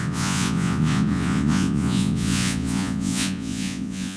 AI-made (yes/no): yes